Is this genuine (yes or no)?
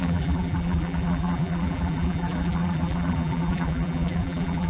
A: no